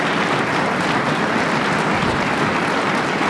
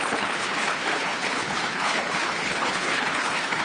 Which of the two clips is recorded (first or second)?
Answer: first